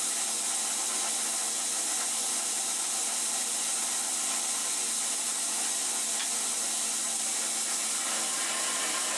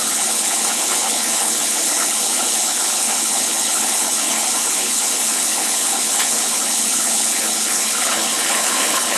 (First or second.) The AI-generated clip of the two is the second